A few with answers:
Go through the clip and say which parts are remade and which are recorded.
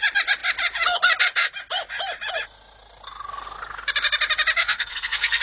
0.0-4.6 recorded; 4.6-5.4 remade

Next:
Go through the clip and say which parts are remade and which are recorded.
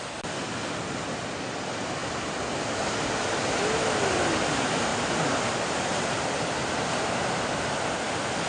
0.0-4.9 recorded; 4.9-7.8 remade; 7.8-8.5 recorded